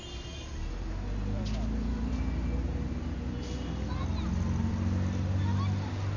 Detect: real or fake real